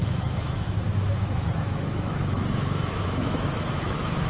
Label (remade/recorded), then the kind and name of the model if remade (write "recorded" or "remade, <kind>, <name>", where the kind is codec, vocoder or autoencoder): remade, autoencoder, DAC-VAE